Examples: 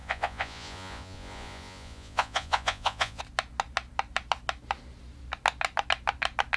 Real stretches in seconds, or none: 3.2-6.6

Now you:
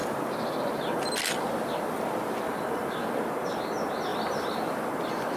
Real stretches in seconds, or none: 3.2-4.1; 4.9-5.4

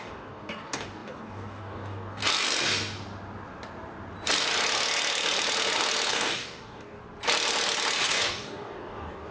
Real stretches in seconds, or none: 2.2-6.1; 7.0-8.1

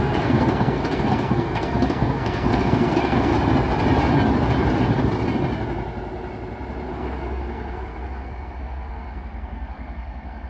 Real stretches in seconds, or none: 3.3-6.9

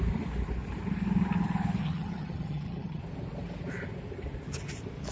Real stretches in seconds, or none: 0.0-1.8; 3.0-5.1